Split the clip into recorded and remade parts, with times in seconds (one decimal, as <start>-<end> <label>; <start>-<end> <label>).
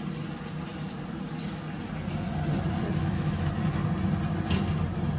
0.0-3.0 recorded; 3.0-3.5 remade; 3.5-5.2 recorded